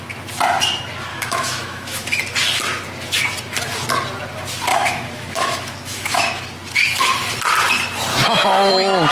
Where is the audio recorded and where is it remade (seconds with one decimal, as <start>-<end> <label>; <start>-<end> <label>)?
0.0-1.1 recorded; 1.1-2.2 remade; 2.2-4.7 recorded; 4.7-6.4 remade; 6.4-8.1 recorded; 8.1-8.7 remade; 8.7-9.1 recorded